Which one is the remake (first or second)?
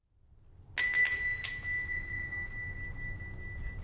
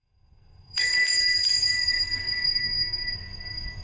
second